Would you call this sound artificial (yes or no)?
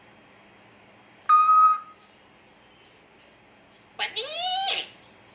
no